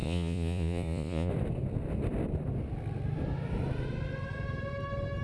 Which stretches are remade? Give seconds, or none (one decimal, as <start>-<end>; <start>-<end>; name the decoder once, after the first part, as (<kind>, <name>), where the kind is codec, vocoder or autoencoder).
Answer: 0.0-1.3 (vocoder, Vocos)

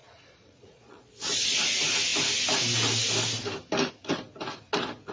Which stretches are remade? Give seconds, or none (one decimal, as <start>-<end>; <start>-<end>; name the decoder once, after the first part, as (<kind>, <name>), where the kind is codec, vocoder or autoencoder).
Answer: 0.0-1.6 (vocoder, Vocos)

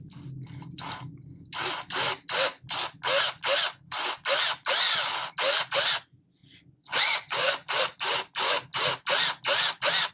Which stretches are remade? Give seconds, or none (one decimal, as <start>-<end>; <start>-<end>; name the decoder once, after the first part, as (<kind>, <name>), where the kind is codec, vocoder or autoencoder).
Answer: 6.4-7.8 (vocoder, Vocos)

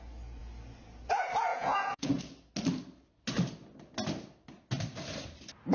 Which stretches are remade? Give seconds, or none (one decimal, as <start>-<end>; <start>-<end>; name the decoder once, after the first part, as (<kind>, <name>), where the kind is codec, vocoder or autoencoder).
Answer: 1.5-2.1 (vocoder, Vocos)

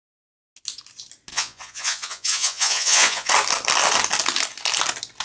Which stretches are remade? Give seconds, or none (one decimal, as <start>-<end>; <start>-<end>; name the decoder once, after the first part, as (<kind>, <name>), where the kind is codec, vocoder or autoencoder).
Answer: 1.3-3.3 (vocoder, Vocos)

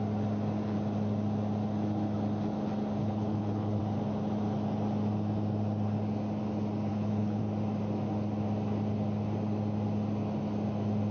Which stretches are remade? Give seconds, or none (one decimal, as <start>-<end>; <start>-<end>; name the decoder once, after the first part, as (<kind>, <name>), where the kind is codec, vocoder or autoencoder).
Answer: 3.0-3.8 (codec, HILCodec); 6.9-7.4

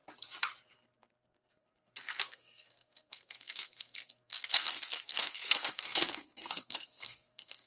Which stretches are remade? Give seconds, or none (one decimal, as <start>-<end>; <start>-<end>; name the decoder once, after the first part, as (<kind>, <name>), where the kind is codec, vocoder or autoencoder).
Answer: 0.7-7.7 (codec, SNAC)